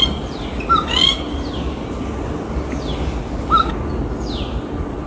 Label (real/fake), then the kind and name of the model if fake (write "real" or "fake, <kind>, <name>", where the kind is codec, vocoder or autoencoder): real